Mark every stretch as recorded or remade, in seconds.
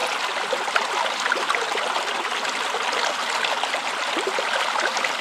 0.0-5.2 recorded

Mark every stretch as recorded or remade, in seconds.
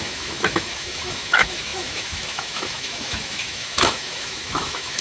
0.0-5.0 remade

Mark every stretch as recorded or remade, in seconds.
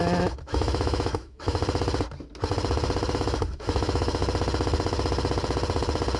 0.0-1.6 remade; 1.6-3.1 recorded; 3.1-4.2 remade; 4.2-6.2 recorded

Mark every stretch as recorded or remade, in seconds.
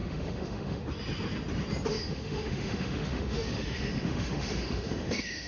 0.0-0.8 remade; 0.8-1.9 recorded; 1.9-5.5 remade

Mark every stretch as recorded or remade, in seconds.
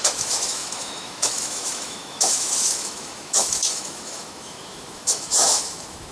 0.0-6.1 remade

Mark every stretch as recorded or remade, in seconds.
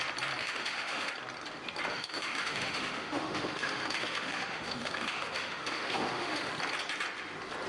0.0-0.4 recorded; 0.4-1.1 remade; 1.1-1.9 recorded; 1.9-6.5 remade; 6.5-7.7 recorded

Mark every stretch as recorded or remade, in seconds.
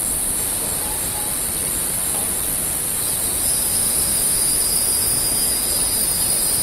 0.0-3.7 recorded; 3.7-4.5 remade; 4.5-6.6 recorded